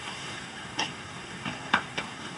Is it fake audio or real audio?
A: fake